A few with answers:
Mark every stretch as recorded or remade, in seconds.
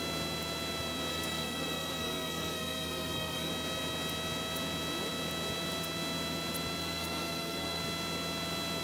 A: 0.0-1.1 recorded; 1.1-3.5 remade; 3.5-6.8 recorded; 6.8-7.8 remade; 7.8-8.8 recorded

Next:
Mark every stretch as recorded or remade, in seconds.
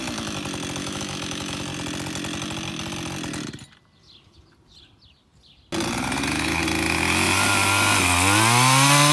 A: 0.0-0.8 recorded; 0.8-1.6 remade; 1.6-9.1 recorded